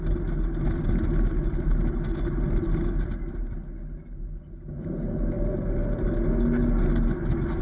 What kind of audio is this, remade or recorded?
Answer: recorded